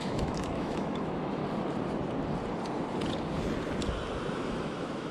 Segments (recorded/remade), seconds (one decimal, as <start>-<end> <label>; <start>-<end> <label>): 0.0-1.4 remade; 1.4-4.5 recorded; 4.5-5.1 remade

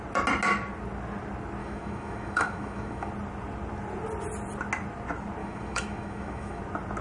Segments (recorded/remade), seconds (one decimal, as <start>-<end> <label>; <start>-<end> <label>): 0.0-1.6 recorded; 1.6-3.1 remade; 3.1-5.4 recorded; 5.4-6.6 remade; 6.6-7.0 recorded